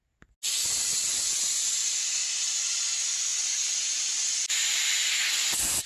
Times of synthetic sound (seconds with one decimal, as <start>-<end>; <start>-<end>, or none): none

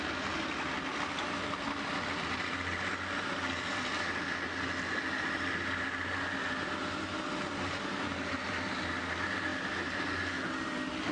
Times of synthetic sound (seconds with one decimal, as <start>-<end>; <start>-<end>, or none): none

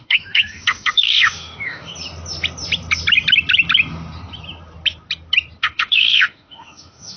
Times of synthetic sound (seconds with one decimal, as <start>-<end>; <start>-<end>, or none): 0.0-1.9; 5.6-7.2

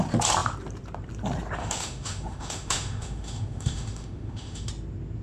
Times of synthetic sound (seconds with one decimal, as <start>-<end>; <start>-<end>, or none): 1.6-4.7

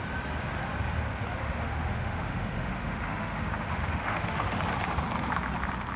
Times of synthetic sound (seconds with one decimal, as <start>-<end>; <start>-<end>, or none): 1.4-4.6

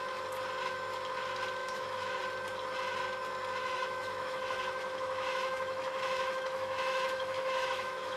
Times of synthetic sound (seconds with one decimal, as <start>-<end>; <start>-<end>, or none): 1.6-2.2; 3.6-8.2